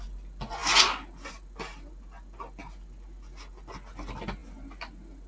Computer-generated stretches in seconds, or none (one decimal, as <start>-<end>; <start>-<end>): none